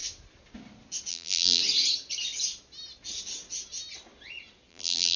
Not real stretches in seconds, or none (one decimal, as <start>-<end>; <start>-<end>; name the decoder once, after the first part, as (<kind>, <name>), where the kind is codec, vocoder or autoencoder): 1.1-1.6 (vocoder, BigVGAN v2); 4.7-5.2